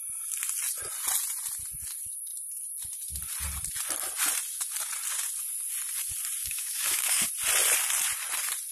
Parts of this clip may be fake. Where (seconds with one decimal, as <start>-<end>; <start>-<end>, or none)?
6.4-7.3